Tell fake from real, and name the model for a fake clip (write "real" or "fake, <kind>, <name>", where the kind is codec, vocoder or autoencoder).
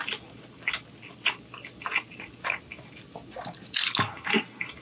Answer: real